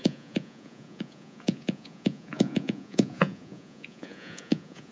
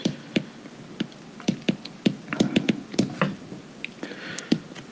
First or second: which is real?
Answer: second